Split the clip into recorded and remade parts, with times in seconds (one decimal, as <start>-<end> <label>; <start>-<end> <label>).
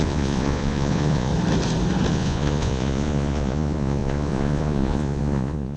0.0-1.3 remade; 1.3-2.1 recorded; 2.1-5.8 remade